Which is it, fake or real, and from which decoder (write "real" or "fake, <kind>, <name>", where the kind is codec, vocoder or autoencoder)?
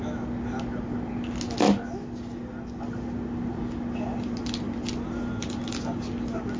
real